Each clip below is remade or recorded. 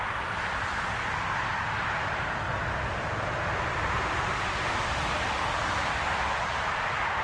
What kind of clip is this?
remade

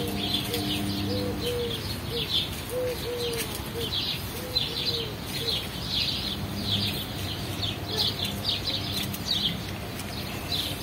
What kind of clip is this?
recorded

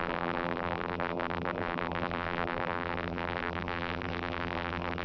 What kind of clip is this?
remade